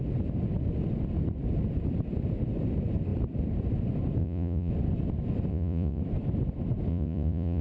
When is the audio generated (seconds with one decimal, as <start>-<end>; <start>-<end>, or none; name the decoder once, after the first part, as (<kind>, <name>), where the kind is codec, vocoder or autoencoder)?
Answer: 4.2-4.7 (vocoder, Vocos); 5.5-6.0; 6.9-7.6